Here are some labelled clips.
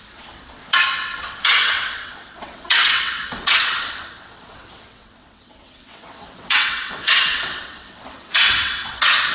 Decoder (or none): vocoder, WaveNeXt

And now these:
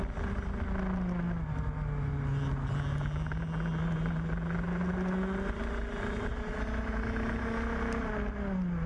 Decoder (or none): none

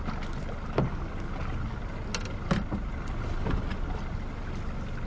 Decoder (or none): none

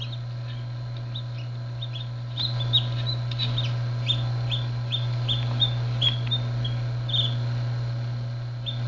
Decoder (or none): none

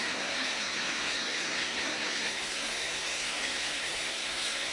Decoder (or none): codec, SNAC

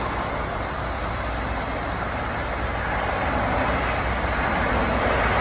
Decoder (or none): none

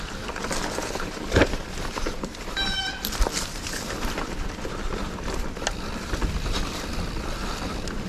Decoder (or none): vocoder, BigVGAN v2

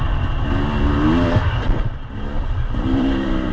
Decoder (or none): none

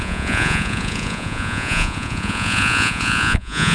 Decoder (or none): vocoder, Vocos